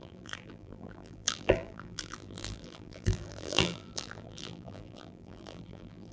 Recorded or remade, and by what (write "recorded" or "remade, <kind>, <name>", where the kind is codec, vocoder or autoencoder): remade, vocoder, BigVGAN v2